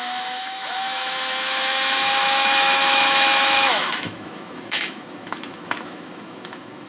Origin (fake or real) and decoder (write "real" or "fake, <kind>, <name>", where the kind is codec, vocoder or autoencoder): fake, autoencoder, DAC-VAE